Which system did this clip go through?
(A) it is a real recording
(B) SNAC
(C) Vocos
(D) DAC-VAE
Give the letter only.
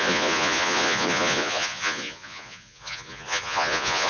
C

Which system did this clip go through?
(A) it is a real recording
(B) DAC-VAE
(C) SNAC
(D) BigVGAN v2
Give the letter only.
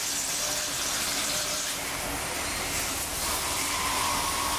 D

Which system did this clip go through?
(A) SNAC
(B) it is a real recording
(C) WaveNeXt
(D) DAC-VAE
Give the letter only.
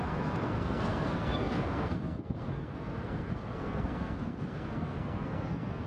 A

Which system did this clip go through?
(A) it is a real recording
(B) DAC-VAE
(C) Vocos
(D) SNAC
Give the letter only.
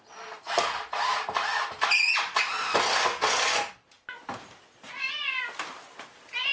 A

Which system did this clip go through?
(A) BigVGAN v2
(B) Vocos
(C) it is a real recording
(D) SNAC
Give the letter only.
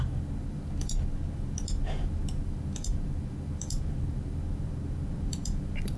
C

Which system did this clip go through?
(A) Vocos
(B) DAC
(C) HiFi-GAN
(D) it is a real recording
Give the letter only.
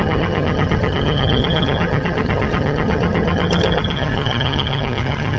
C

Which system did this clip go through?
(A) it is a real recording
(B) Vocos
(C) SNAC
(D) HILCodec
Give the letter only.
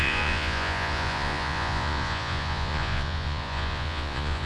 B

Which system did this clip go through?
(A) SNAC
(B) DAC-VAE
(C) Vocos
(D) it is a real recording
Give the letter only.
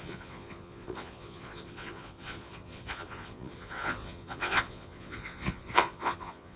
C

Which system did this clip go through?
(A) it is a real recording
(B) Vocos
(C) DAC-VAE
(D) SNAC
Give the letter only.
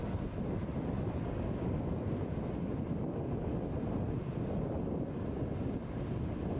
A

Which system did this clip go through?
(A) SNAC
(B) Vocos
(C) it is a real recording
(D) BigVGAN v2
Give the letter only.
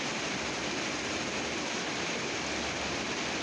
C